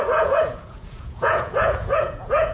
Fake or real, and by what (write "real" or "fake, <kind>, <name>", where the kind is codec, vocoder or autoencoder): fake, vocoder, Vocos